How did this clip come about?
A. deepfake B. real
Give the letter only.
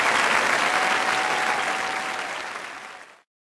B